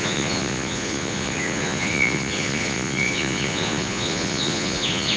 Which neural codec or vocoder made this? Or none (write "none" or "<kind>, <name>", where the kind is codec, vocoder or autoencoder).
vocoder, Vocos